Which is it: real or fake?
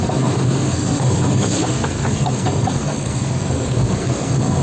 fake